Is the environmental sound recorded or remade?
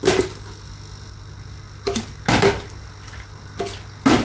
recorded